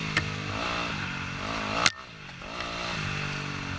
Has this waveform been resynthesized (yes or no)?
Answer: no